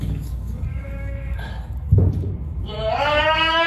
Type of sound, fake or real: fake